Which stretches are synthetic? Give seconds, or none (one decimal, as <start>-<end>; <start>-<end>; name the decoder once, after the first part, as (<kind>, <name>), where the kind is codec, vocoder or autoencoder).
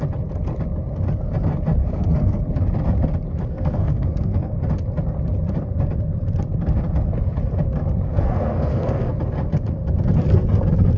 1.8-2.4 (codec, SNAC); 3.5-4.5; 8.1-9.1